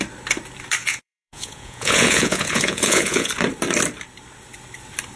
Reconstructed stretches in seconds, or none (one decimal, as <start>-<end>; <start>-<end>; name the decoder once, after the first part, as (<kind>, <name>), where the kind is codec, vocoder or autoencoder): 0.8-3.3 (vocoder, Vocos)